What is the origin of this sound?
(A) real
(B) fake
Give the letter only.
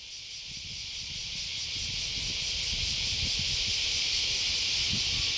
A